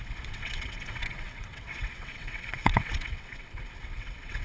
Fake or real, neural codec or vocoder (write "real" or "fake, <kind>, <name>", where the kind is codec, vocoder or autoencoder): fake, vocoder, WaveNeXt